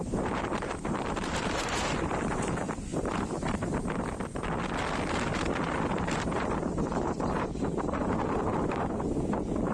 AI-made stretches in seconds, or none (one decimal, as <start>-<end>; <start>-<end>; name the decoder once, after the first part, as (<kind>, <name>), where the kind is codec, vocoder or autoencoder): 0.0-2.9 (vocoder, BigVGAN v2); 6.0-9.7

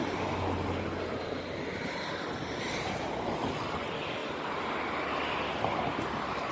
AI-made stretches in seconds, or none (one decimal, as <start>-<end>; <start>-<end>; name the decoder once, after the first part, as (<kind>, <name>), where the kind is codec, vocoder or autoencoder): none

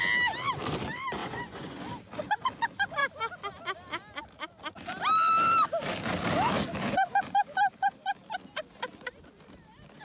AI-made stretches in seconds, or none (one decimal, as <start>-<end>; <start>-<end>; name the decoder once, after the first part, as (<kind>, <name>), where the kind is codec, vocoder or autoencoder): 1.2-1.8 (vocoder, Vocos)

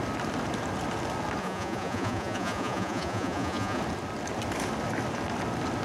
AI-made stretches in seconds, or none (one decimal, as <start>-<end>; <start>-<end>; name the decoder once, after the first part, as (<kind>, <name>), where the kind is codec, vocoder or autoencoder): 1.4-3.8 (vocoder, Vocos)

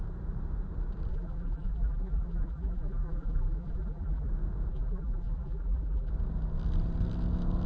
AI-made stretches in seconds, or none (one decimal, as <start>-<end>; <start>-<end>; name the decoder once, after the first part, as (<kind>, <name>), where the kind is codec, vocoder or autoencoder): 1.1-4.3 (vocoder, BigVGAN v2); 4.7-6.1